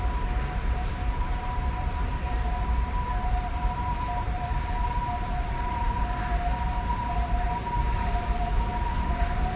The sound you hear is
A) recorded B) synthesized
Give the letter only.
B